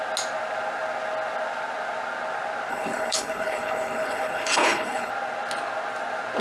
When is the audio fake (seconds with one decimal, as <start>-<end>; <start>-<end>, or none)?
2.7-5.1